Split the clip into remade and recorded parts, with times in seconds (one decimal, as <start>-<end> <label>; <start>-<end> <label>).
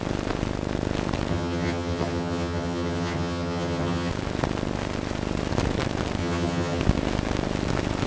0.0-1.3 recorded; 1.3-4.1 remade; 4.1-6.2 recorded; 6.2-6.8 remade; 6.8-8.1 recorded